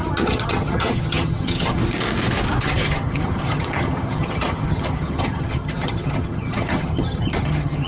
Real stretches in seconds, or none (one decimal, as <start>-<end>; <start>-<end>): 1.8-2.6